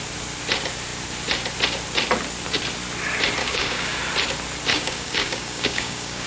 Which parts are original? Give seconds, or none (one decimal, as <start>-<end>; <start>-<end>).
0.0-3.4; 4.0-4.7